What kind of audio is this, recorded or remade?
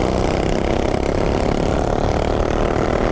recorded